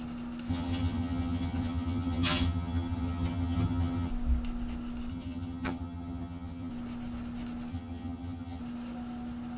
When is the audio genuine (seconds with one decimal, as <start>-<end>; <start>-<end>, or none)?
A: 0.0-0.5; 4.1-5.1; 6.7-7.7; 8.6-9.6